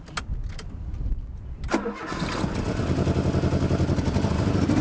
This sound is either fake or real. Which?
real